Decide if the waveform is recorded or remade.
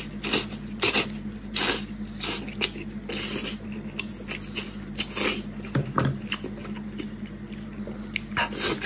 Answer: recorded